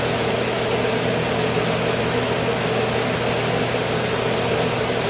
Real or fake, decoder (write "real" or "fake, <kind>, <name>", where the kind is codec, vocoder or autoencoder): real